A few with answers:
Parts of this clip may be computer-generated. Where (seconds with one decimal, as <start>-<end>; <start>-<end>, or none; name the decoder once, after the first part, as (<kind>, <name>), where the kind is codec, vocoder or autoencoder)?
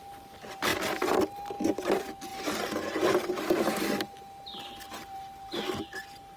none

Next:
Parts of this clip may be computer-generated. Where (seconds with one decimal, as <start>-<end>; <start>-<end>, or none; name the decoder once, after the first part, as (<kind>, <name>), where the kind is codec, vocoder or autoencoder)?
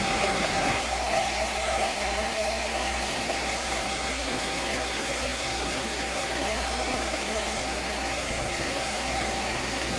0.0-10.0 (codec, SNAC)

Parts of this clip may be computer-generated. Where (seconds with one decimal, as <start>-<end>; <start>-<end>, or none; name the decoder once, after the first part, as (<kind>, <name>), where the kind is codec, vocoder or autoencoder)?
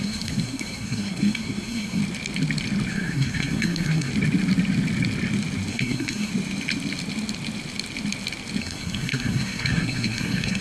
0.0-2.0 (codec, SNAC); 2.9-4.1; 5.7-6.3; 8.6-10.6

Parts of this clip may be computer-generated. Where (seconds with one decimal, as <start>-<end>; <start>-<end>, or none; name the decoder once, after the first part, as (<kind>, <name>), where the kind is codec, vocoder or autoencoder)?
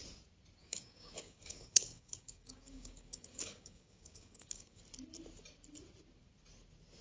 0.6-4.8 (codec, DAC)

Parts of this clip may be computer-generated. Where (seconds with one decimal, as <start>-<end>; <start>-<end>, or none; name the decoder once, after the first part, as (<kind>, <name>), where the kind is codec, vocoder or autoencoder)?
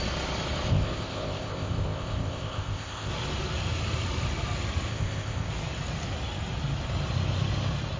0.7-3.1 (codec, ZipCodec); 4.9-5.5